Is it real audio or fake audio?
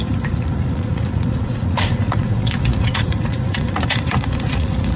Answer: fake